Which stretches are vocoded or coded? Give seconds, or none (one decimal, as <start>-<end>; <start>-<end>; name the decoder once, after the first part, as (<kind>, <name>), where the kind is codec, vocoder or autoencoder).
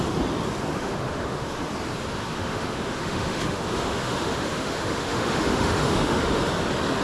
0.7-1.7 (autoencoder, DAC-VAE); 2.2-6.4